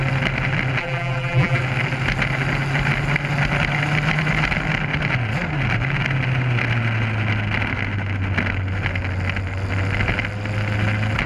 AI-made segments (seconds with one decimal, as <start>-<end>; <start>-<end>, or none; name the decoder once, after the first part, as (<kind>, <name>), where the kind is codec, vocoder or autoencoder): 0.8-1.6 (vocoder, BigVGAN v2)